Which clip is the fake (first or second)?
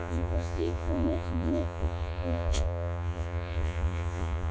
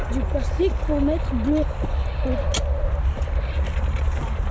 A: first